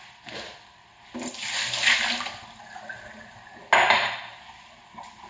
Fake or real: real